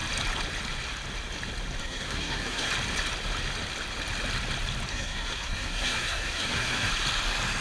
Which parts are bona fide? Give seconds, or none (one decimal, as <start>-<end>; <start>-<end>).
0.0-1.8; 2.7-4.9; 6.9-7.6